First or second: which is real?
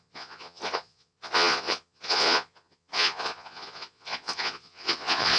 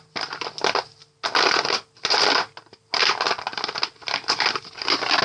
second